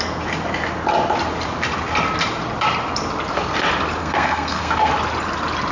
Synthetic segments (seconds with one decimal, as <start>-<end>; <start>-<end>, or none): 4.0-4.9